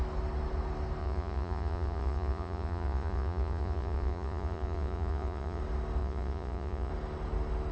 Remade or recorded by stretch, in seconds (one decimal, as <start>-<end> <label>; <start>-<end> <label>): 0.0-1.0 recorded; 1.0-5.6 remade; 5.6-6.0 recorded; 6.0-6.9 remade; 6.9-7.7 recorded